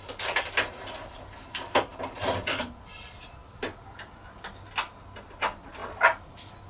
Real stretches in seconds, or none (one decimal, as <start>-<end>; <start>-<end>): 0.0-6.7